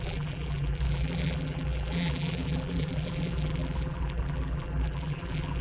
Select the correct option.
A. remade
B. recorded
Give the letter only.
A